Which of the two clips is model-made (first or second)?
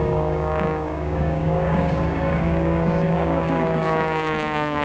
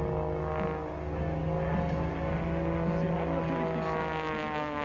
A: first